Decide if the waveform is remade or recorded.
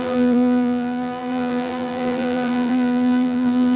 remade